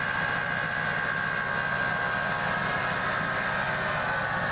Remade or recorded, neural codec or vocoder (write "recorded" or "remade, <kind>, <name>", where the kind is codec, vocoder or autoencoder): recorded